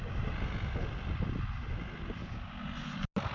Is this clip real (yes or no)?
yes